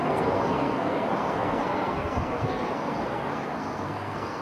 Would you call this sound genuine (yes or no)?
no